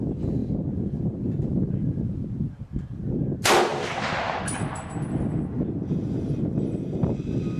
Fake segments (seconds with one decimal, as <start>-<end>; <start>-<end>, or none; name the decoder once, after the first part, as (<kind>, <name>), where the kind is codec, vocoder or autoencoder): none